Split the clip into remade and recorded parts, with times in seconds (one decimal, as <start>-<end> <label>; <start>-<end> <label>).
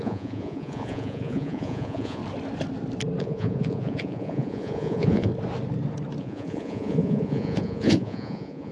0.0-2.2 remade; 2.2-3.2 recorded; 3.2-5.3 remade; 5.3-6.2 recorded; 6.2-8.7 remade